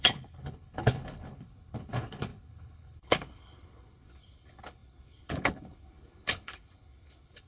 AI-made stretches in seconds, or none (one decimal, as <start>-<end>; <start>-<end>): 0.0-7.5